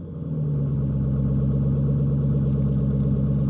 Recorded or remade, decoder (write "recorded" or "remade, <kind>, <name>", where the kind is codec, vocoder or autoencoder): recorded